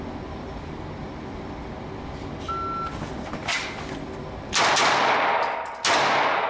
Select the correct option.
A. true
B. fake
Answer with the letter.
A